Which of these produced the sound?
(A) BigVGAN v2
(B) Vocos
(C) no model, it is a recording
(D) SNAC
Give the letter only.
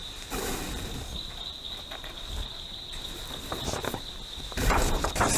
A